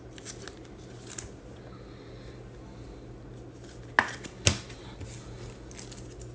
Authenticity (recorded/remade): recorded